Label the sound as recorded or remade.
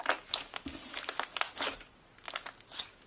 recorded